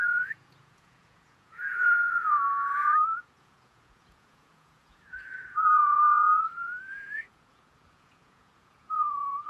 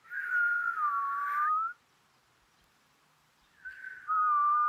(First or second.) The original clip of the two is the second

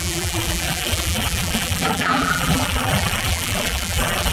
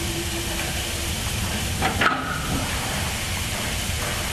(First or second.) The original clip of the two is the second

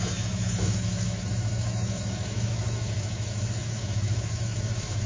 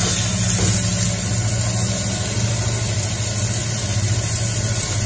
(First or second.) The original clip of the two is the second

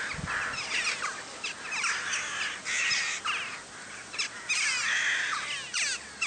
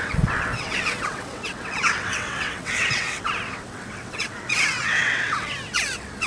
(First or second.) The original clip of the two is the first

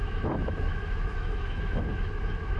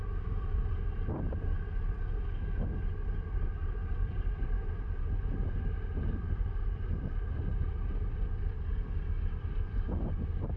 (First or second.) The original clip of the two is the second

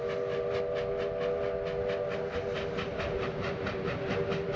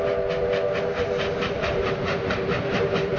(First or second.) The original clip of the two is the first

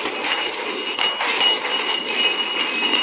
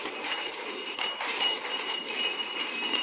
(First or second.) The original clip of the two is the first